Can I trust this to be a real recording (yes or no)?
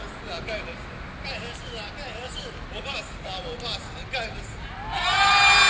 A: yes